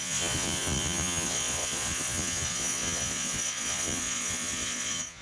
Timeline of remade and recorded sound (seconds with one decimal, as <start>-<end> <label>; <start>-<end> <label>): 0.0-5.2 remade